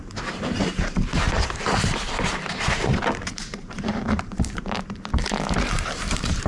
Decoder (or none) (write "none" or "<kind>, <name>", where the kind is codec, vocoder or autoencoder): vocoder, BigVGAN v2